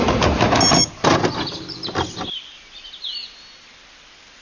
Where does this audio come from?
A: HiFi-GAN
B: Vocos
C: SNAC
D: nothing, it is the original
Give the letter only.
D